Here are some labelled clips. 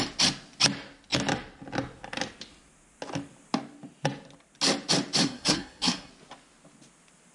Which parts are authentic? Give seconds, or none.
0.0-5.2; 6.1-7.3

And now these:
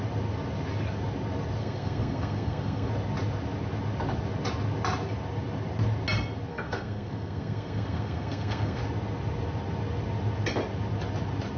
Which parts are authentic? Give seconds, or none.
0.0-1.6; 2.9-6.5; 8.8-11.6

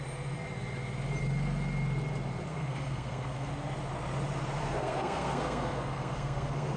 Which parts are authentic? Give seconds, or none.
0.0-2.5; 3.5-4.6

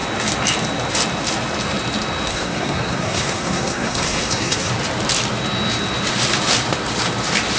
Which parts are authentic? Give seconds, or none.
0.0-2.3; 4.7-7.6

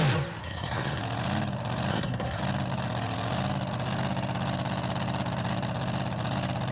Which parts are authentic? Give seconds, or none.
0.0-0.4; 1.0-1.9; 2.4-6.7

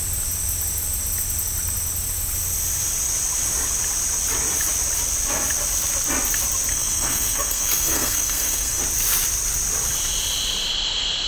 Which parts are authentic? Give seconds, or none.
0.0-6.7; 8.8-11.3

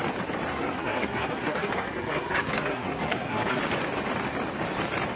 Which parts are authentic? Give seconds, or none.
0.0-0.5; 3.6-5.2

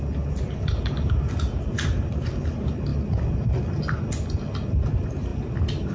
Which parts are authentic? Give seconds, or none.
0.0-5.9